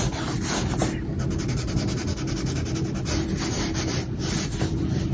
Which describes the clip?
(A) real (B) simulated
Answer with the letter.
A